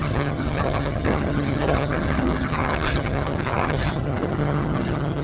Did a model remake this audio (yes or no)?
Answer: yes